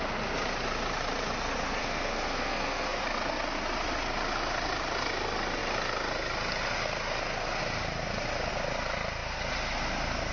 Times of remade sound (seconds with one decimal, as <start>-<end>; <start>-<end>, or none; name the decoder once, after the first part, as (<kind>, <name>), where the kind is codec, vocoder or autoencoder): 1.8-3.0 (codec, SNAC)